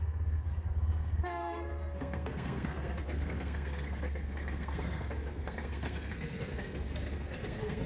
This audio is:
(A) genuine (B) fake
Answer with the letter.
B